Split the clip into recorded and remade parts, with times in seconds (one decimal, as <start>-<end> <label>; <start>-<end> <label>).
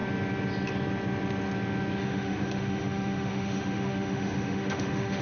0.0-2.0 recorded; 2.0-5.2 remade